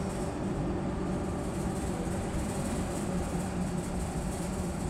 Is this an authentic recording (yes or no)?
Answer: no